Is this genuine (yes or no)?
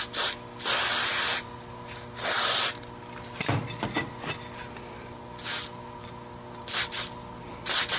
no